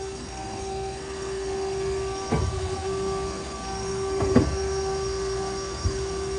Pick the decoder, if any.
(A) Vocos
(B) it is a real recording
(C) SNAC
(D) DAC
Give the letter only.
C